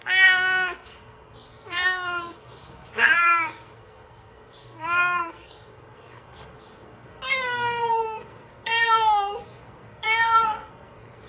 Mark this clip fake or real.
fake